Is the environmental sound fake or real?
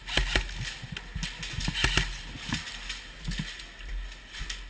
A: real